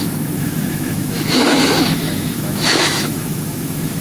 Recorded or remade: remade